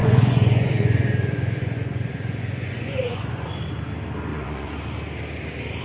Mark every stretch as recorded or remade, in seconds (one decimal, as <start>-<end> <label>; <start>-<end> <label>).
0.0-3.5 remade; 3.5-4.3 recorded; 4.3-4.8 remade; 4.8-5.8 recorded